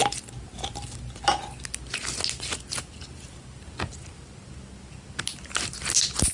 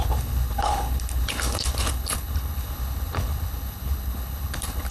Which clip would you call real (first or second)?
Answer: first